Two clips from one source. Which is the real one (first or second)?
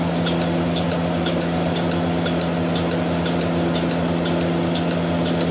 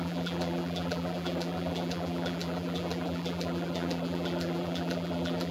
first